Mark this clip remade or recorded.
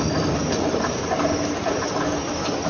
recorded